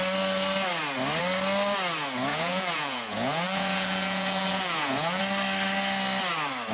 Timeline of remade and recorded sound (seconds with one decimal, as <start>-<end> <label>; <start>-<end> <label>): 0.0-2.3 recorded; 2.3-5.2 remade; 5.2-6.7 recorded